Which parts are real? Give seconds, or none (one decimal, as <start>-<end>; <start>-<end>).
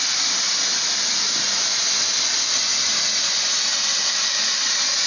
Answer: 0.0-5.1